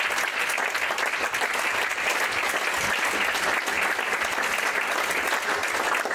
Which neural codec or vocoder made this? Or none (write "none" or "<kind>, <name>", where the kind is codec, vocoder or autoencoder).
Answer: none